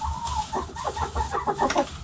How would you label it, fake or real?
real